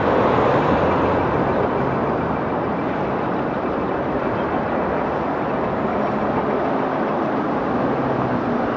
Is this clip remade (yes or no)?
no